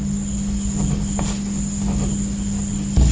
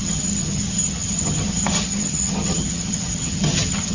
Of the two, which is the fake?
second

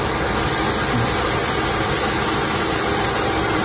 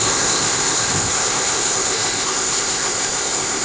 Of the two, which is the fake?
second